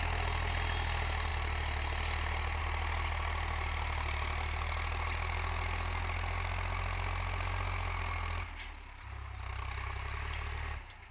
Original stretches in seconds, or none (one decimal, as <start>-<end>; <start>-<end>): 0.0-11.1